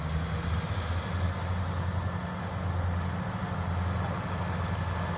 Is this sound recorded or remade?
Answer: recorded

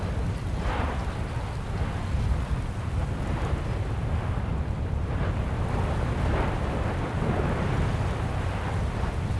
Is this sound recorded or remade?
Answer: recorded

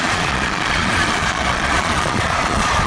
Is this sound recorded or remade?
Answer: remade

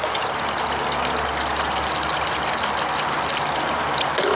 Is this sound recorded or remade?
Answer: recorded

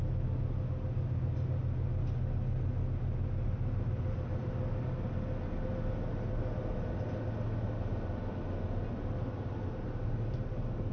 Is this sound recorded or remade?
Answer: recorded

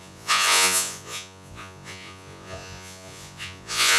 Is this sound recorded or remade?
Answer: remade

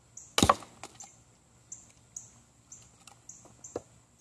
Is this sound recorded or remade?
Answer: recorded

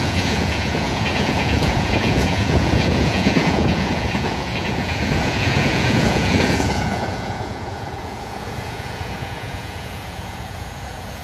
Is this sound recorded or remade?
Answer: remade